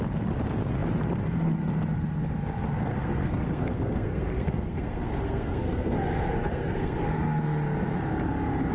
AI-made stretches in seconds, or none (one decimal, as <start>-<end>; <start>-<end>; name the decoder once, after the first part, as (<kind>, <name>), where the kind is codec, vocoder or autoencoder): 2.9-7.2 (codec, SNAC)